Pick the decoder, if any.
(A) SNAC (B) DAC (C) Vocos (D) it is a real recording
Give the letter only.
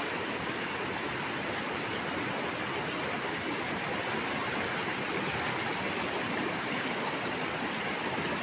D